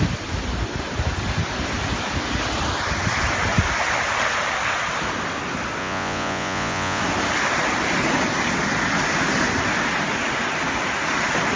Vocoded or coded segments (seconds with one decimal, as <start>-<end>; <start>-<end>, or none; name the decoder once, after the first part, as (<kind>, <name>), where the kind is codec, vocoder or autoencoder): 5.8-7.0 (vocoder, Vocos)